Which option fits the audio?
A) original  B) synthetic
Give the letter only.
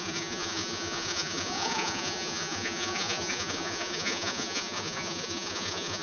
B